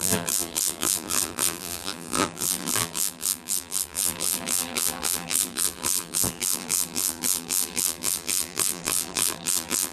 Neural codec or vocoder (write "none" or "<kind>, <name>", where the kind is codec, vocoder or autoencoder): vocoder, BigVGAN v2